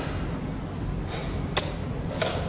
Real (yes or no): yes